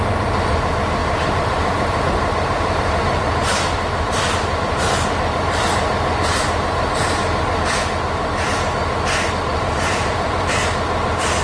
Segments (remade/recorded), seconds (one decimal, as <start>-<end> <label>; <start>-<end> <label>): 0.0-1.0 recorded; 1.0-4.3 remade; 4.3-6.3 recorded; 6.3-6.9 remade; 6.9-9.5 recorded; 9.5-10.6 remade; 10.6-11.4 recorded